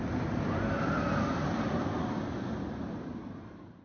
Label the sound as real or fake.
real